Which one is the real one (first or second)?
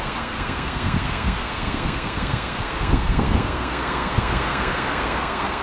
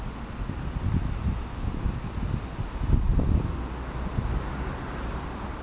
second